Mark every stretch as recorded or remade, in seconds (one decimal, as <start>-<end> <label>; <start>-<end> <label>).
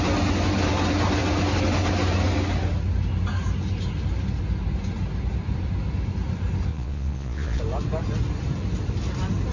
0.0-6.7 recorded; 6.7-7.6 remade; 7.6-9.5 recorded